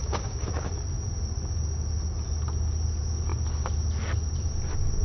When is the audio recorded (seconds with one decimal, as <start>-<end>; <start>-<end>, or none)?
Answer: 0.7-5.0